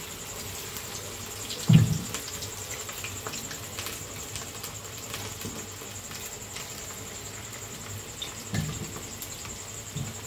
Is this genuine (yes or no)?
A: yes